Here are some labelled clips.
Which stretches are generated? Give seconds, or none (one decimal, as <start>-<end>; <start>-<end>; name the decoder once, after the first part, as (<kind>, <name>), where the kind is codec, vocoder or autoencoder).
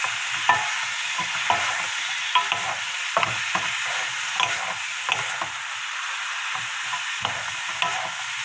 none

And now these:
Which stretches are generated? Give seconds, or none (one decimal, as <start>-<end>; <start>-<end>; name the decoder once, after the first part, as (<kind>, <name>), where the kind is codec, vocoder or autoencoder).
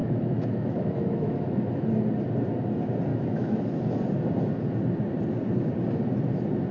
0.0-1.9 (autoencoder, DAC-VAE); 3.1-3.9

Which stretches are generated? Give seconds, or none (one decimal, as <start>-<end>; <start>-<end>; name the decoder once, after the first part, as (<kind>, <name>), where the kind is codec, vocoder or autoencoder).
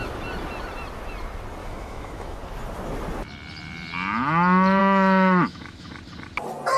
1.6-2.4 (autoencoder, DAC-VAE); 4.8-6.0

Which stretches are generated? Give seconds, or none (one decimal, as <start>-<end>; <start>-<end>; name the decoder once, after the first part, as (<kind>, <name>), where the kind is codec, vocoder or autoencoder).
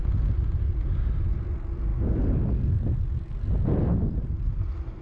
none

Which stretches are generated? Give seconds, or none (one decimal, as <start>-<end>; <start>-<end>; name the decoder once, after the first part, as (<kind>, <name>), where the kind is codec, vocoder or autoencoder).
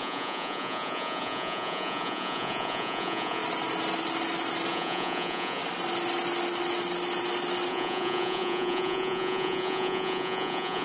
0.0-3.4 (vocoder, Vocos); 4.7-5.6; 7.7-10.8